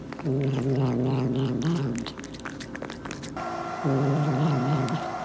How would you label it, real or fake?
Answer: real